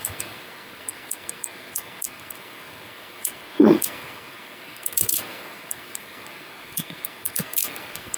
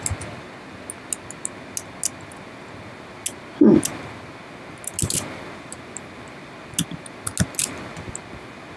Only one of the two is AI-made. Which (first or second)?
first